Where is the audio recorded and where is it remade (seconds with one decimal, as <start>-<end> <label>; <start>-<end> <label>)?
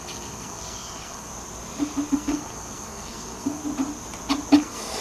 0.0-1.3 remade; 1.3-2.1 recorded; 2.1-3.6 remade; 3.6-4.6 recorded; 4.6-5.0 remade